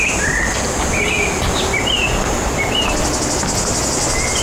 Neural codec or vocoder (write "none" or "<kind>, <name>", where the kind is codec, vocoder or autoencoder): none